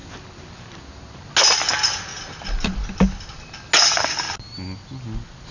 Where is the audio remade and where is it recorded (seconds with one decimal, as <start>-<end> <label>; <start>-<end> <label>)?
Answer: 0.0-1.7 recorded; 1.7-2.1 remade; 2.1-5.5 recorded